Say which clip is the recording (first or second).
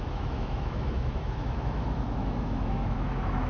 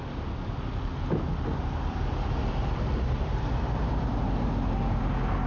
second